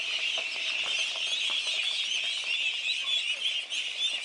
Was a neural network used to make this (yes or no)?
no